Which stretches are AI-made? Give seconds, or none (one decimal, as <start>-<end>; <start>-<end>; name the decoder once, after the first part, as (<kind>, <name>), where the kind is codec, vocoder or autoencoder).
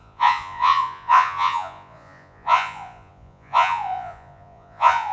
0.0-5.1 (vocoder, Vocos)